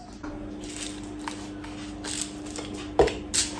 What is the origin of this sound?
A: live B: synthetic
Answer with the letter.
A